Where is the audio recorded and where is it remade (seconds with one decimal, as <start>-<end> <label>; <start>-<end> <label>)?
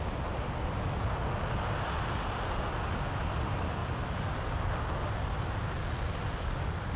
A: 0.0-7.0 recorded